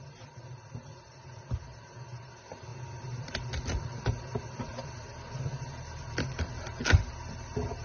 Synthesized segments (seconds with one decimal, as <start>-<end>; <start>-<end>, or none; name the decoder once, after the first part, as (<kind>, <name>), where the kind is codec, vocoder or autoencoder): none